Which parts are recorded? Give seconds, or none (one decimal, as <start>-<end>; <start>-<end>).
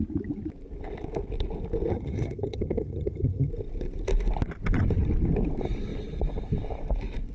0.0-1.9; 3.5-7.3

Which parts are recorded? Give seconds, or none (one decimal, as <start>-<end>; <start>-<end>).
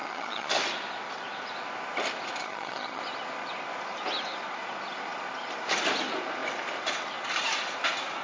0.5-2.4; 3.0-8.2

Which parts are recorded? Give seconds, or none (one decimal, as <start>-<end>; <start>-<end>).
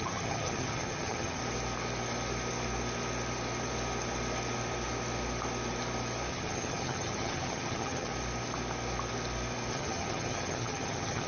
1.4-6.3; 8.1-9.7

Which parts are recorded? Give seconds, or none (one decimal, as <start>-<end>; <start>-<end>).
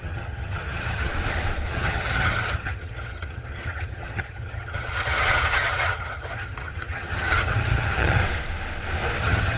1.1-1.7; 8.2-9.2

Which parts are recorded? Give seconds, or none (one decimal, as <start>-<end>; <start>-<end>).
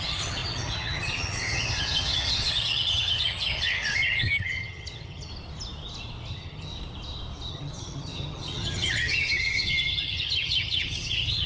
5.3-6.3; 6.7-7.5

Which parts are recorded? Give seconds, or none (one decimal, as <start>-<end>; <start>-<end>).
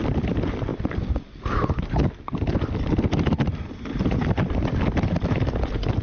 0.0-6.0